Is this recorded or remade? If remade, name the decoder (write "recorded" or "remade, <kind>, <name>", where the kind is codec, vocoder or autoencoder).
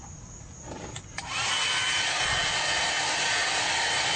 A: recorded